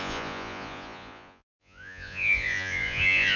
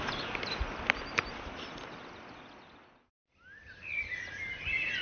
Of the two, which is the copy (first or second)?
first